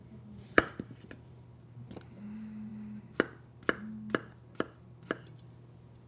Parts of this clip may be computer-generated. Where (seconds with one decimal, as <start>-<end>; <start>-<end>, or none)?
0.0-1.5